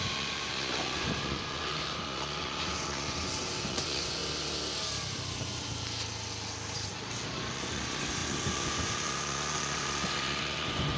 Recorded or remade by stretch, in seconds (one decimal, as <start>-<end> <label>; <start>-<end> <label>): 0.0-4.2 remade; 4.2-7.5 recorded; 7.5-11.0 remade

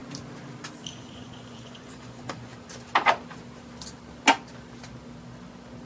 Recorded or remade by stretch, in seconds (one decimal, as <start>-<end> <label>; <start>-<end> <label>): 0.0-0.9 recorded; 0.9-2.5 remade; 2.5-5.9 recorded

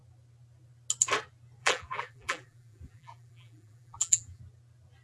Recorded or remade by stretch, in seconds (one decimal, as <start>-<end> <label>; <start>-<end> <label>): 0.0-1.6 recorded; 1.6-4.4 remade; 4.4-5.0 recorded

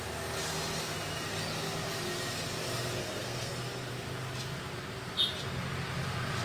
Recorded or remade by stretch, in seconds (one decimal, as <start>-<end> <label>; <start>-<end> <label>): 0.0-3.0 recorded; 3.0-3.5 remade; 3.5-6.4 recorded

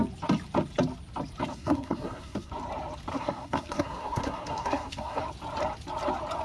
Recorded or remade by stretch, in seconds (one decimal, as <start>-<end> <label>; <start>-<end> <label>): 0.0-1.5 recorded; 1.5-2.5 remade; 2.5-3.1 recorded; 3.1-5.2 remade; 5.2-6.4 recorded

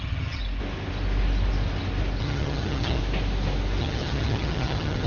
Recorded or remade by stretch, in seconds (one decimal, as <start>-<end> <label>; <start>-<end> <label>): 0.0-0.4 remade; 0.4-2.2 recorded; 2.2-3.0 remade; 3.0-3.8 recorded; 3.8-5.1 remade